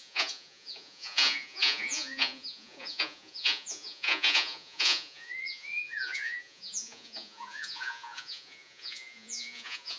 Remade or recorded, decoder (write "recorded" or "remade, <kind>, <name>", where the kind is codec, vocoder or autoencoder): remade, vocoder, Vocos